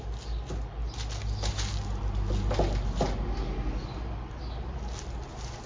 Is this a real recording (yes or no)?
yes